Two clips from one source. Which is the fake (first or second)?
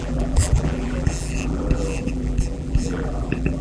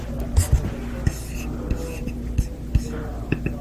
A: first